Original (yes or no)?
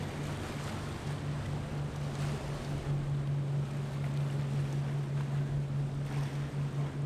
yes